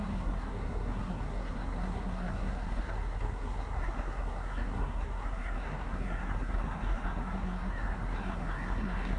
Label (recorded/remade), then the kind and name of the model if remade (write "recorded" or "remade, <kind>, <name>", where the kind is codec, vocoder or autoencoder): remade, codec, SNAC